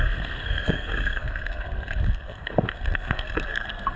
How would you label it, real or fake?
fake